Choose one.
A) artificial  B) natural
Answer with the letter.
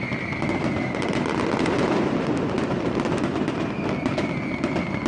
B